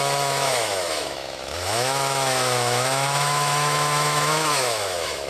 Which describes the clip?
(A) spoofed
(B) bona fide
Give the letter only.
A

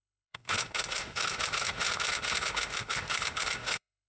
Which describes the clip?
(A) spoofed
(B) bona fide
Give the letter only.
A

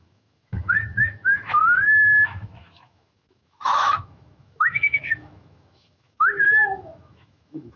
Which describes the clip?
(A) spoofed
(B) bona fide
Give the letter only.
A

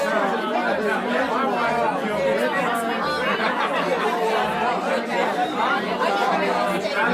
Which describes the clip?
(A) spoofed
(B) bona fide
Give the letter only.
B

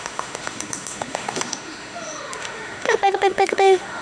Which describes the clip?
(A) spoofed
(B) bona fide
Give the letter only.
A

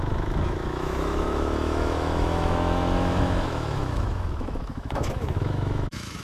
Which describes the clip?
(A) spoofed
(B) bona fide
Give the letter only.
A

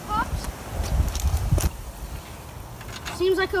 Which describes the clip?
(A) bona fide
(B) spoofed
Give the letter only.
A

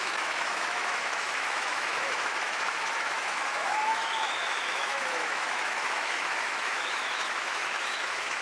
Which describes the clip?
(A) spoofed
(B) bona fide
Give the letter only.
A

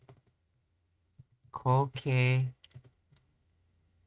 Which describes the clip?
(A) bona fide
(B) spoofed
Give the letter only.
B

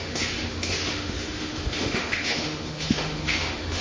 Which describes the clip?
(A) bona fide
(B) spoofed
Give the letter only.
B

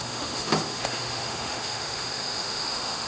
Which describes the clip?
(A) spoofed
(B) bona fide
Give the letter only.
A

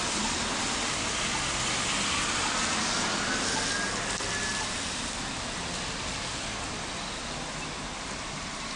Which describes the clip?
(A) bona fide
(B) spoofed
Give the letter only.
A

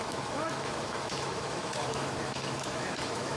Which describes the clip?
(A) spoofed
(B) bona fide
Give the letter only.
A